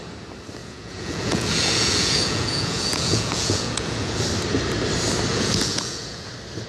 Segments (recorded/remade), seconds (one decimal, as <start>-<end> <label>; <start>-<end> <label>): 0.0-0.6 recorded; 0.6-4.2 remade; 4.2-5.3 recorded; 5.3-6.3 remade; 6.3-6.7 recorded